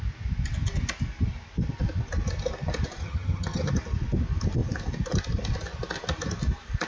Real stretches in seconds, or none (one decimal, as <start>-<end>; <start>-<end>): 0.0-3.0; 3.7-6.9